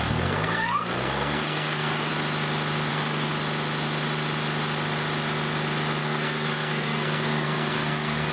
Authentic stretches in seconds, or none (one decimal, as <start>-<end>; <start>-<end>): 2.1-2.9; 3.3-6.0